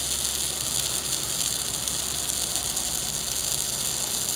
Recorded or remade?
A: recorded